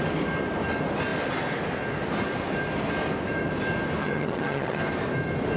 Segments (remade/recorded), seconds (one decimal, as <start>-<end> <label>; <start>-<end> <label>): 0.0-4.0 recorded; 4.0-4.8 remade; 4.8-5.6 recorded